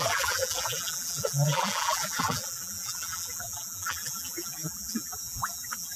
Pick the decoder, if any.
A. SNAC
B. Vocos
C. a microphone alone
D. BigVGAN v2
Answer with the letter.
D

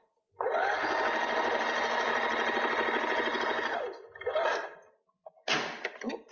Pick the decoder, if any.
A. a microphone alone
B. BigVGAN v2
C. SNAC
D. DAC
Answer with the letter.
A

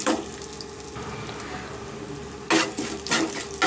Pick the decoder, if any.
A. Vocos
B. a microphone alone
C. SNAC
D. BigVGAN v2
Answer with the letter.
B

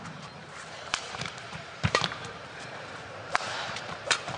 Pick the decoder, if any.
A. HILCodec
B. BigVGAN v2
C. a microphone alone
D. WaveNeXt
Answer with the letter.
B